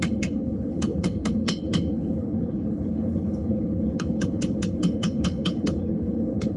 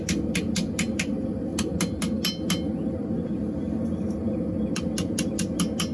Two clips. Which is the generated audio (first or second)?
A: first